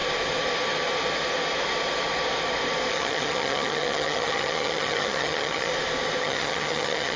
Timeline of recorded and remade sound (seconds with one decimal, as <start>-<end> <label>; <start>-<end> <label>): 0.0-2.9 recorded; 2.9-5.7 remade; 5.7-6.2 recorded; 6.2-7.2 remade